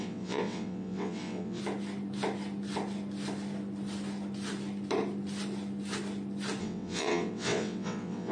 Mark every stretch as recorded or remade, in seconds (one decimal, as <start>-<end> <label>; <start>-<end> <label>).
0.0-1.6 remade; 1.6-6.6 recorded; 6.6-8.3 remade

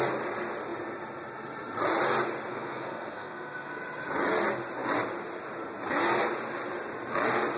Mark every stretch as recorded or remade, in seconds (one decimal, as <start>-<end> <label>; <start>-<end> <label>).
0.0-2.5 recorded; 2.5-3.8 remade; 3.8-7.6 recorded

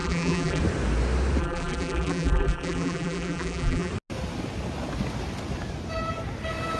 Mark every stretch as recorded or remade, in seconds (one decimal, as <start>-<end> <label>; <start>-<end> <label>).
0.0-0.6 remade; 0.6-1.4 recorded; 1.4-3.9 remade; 3.9-6.8 recorded